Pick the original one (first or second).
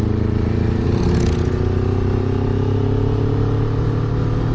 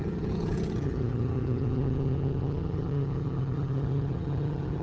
first